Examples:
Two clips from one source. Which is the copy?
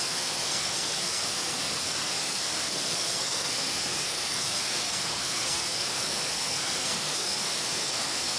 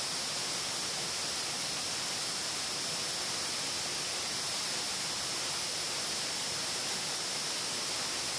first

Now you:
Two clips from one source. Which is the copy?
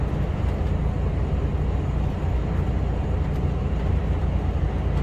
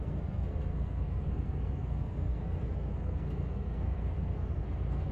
second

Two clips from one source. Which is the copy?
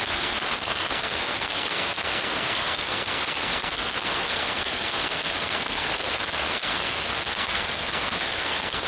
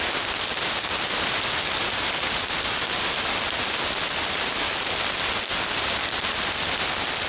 first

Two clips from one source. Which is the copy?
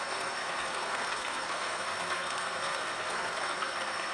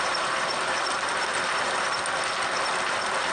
first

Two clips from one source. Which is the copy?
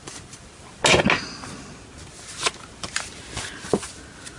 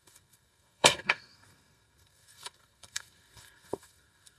second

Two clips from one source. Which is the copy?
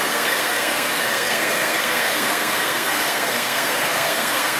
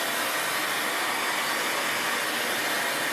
first